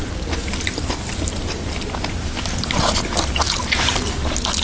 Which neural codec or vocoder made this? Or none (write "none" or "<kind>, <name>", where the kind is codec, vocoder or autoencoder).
none